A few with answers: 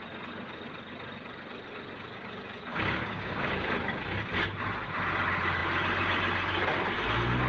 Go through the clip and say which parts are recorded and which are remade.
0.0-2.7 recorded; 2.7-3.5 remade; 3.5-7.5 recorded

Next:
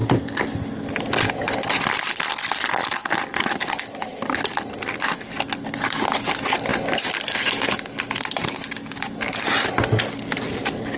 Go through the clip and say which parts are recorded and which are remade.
0.0-11.0 recorded

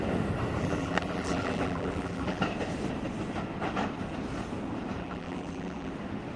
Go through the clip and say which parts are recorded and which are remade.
0.0-0.6 recorded; 0.6-2.4 remade; 2.4-5.0 recorded; 5.0-5.9 remade; 5.9-6.4 recorded

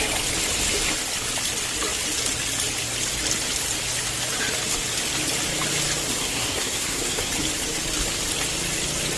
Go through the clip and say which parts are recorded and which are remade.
0.0-6.2 recorded; 6.2-7.3 remade; 7.3-9.2 recorded

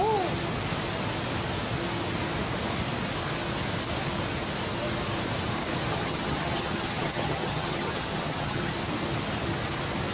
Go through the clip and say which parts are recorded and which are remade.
0.0-5.9 recorded; 5.9-8.7 remade; 8.7-10.1 recorded

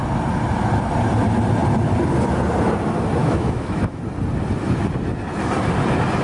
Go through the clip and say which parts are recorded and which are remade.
0.0-3.2 recorded; 3.2-4.0 remade; 4.0-6.2 recorded